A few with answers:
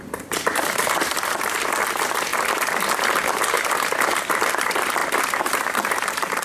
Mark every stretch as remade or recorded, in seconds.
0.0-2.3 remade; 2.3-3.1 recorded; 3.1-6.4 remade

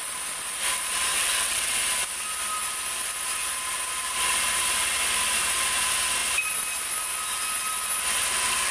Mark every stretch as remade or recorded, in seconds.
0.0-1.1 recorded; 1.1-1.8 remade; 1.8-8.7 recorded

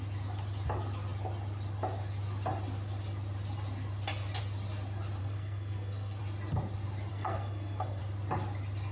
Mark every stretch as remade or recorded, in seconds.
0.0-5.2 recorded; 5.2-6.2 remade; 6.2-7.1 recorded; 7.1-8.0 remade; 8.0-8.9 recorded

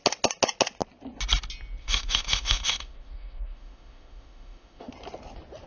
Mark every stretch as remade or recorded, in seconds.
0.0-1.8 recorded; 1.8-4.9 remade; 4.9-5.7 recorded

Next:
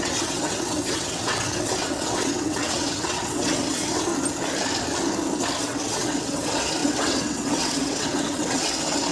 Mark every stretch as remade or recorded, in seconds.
0.0-4.1 remade; 4.1-5.6 recorded; 5.6-9.1 remade

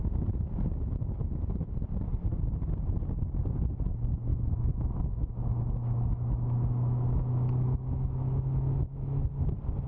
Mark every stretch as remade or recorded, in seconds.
0.0-4.3 recorded; 4.3-9.3 remade; 9.3-9.9 recorded

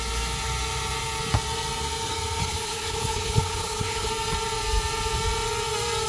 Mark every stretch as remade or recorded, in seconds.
0.0-2.4 recorded; 2.4-4.1 remade; 4.1-6.1 recorded